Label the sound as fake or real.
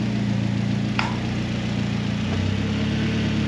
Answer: real